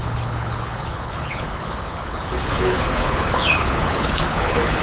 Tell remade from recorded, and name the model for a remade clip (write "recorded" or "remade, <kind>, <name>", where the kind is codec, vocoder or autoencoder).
remade, codec, HILCodec